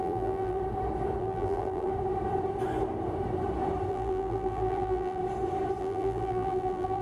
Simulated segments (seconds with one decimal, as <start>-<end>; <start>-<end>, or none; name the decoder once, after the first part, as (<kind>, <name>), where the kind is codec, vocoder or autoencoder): 0.0-0.6 (vocoder, BigVGAN v2); 1.2-1.9; 3.9-5.2; 5.8-7.0